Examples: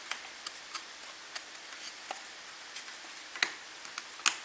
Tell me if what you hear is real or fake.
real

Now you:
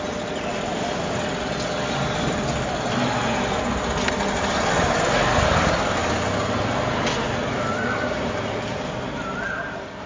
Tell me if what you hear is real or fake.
real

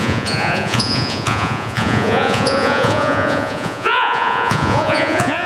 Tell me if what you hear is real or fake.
fake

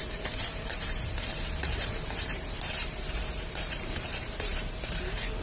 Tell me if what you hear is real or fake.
fake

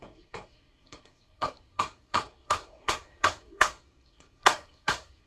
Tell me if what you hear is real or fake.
fake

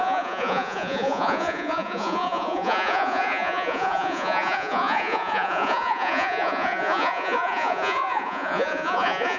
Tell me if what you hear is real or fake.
fake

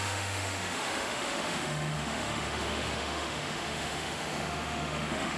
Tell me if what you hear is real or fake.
fake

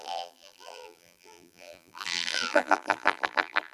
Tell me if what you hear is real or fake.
fake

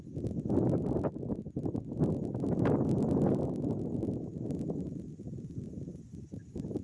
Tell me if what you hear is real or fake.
real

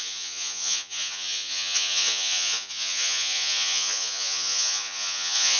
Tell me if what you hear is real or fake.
fake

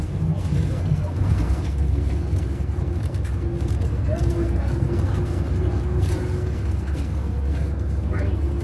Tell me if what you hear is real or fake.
fake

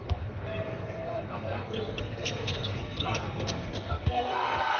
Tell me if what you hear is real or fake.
fake